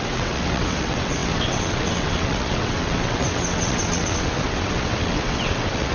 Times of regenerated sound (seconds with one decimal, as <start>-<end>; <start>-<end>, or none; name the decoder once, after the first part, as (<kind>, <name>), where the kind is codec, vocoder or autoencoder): 0.0-5.9 (vocoder, WaveNeXt)